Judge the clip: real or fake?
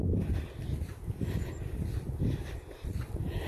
real